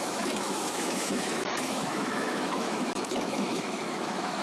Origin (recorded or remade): remade